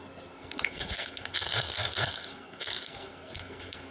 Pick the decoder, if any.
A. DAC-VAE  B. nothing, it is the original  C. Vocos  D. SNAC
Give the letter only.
D